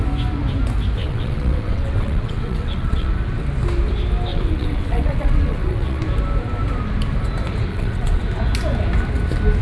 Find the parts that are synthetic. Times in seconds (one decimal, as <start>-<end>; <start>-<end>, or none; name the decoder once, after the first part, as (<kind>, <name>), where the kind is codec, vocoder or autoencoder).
1.0-3.1 (vocoder, WaveNeXt); 4.3-6.0; 7.7-8.2

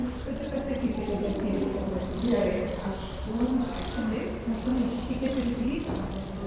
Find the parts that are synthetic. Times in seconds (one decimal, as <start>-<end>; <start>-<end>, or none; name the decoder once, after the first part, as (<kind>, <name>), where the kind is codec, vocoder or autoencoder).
0.0-3.9 (vocoder, BigVGAN v2); 4.7-6.1